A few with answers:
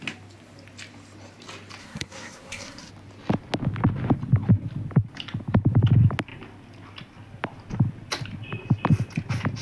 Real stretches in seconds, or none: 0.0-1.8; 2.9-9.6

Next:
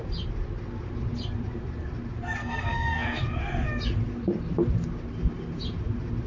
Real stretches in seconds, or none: 0.0-2.4; 3.2-6.3

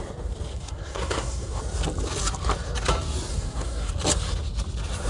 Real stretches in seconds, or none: 0.0-0.5; 1.6-3.3; 3.9-5.1

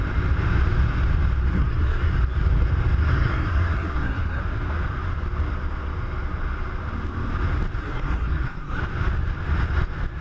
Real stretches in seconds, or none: 0.0-1.5; 2.1-3.0; 4.4-7.8; 8.8-10.2

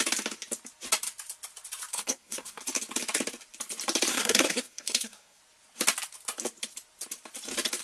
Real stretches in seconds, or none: 0.0-1.9; 2.6-4.1; 5.4-7.8